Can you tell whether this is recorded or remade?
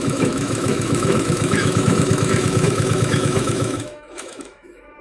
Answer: remade